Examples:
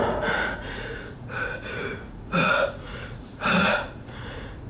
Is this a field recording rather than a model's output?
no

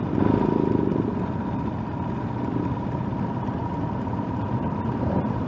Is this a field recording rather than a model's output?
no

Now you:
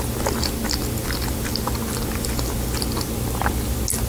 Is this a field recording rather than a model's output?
yes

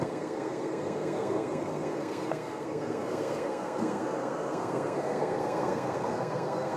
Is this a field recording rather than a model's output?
no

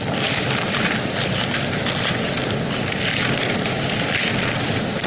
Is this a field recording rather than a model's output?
yes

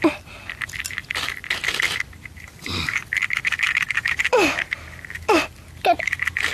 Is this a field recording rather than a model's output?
no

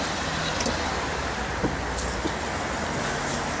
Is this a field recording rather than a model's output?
yes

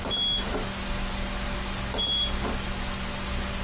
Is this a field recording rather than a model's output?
yes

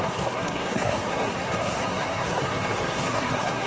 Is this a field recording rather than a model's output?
no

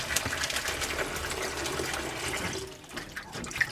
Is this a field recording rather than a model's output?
yes